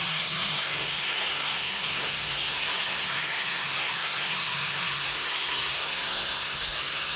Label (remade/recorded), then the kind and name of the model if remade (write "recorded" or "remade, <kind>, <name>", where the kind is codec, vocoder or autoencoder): remade, codec, SNAC